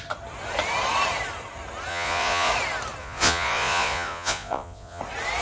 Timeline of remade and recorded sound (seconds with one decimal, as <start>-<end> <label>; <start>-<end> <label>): 0.0-1.9 recorded; 1.9-2.5 remade; 2.5-3.0 recorded; 3.0-5.0 remade; 5.0-5.4 recorded